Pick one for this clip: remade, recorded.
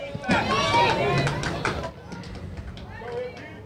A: recorded